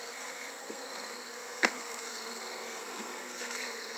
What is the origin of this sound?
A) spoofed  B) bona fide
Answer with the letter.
A